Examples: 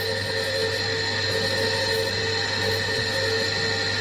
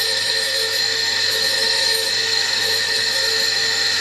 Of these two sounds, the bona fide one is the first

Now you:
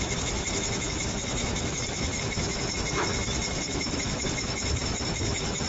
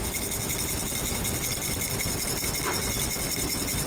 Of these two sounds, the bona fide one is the second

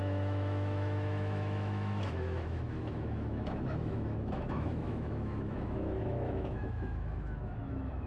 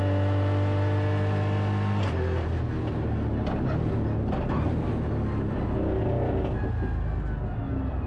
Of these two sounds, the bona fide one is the second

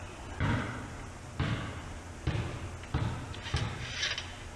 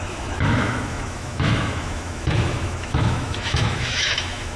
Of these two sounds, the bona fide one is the first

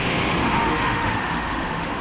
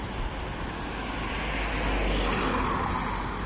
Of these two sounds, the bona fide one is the second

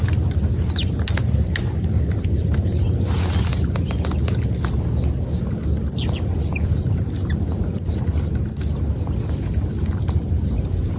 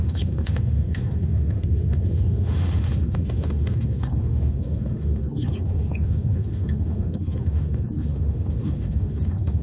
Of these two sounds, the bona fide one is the first